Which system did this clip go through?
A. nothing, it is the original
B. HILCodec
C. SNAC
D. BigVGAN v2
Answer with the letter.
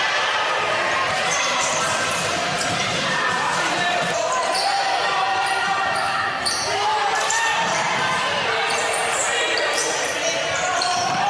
D